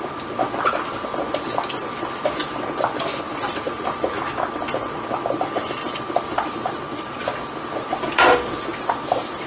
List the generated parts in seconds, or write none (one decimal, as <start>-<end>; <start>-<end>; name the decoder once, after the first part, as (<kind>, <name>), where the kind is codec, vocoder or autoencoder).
6.3-7.9 (vocoder, BigVGAN v2); 8.7-9.5